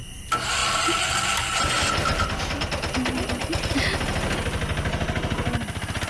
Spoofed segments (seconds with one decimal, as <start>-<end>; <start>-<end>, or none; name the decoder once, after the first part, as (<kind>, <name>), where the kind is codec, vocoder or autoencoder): none